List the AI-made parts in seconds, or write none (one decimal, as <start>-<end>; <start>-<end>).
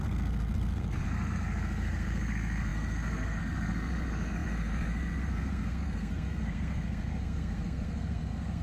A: 0.0-8.6